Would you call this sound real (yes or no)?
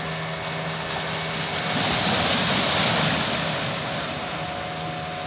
yes